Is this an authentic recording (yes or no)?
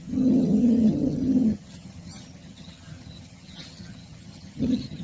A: no